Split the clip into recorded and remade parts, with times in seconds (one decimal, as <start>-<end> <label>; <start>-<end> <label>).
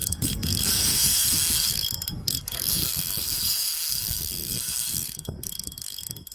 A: 0.0-6.3 remade